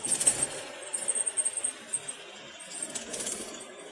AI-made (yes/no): no